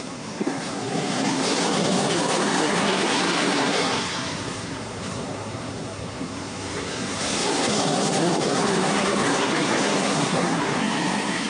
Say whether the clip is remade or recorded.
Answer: remade